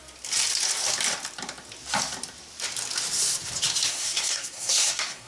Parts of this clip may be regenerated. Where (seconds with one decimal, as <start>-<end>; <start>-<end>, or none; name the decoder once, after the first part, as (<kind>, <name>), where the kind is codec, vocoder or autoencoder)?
3.9-5.3 (codec, SNAC)